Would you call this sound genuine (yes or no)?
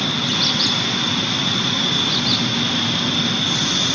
yes